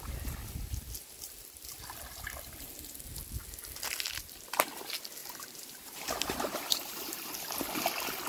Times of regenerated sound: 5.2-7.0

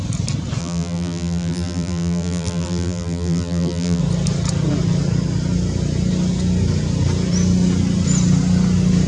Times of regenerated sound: 0.6-4.0

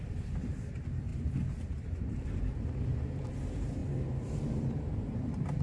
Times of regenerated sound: 0.0-5.6

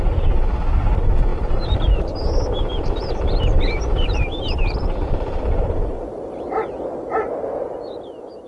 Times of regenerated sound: 1.3-2.1; 2.7-7.6

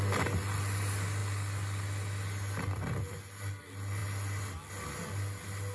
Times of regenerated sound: none

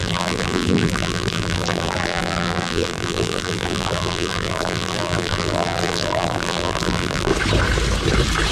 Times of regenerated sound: 0.0-7.3